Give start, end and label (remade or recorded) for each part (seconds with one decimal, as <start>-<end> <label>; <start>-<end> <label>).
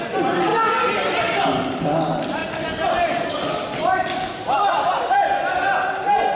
0.0-6.4 recorded